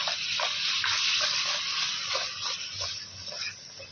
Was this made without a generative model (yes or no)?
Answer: yes